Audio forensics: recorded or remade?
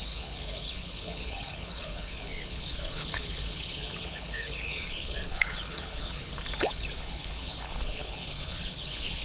remade